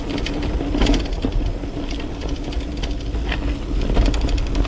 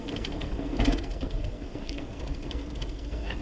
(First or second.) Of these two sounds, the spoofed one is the second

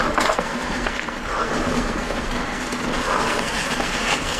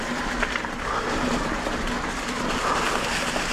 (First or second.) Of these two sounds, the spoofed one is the first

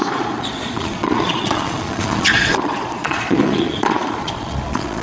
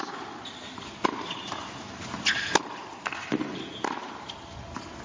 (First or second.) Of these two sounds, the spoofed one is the first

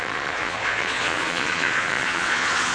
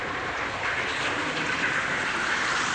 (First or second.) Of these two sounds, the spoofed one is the first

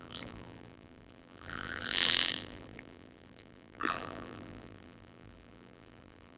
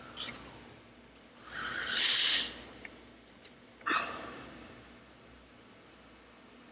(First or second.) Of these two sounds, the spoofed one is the first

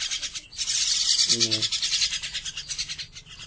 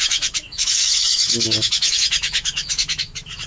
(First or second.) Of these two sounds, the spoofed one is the second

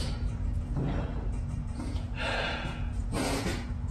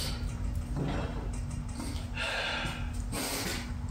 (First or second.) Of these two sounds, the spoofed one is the first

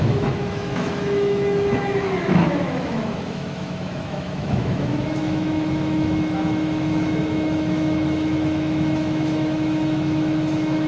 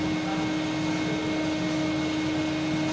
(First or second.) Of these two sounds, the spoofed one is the first